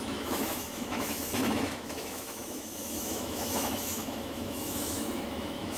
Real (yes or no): no